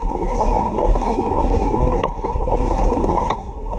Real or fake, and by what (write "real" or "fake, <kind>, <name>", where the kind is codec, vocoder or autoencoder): fake, codec, SNAC